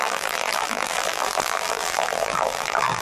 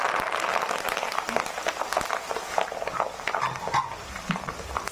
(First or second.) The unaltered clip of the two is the second